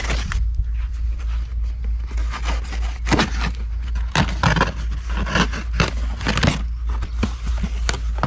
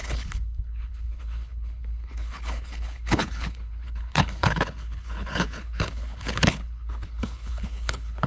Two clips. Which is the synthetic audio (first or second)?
second